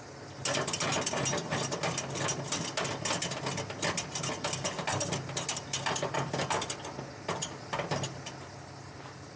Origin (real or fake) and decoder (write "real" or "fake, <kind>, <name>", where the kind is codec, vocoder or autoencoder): real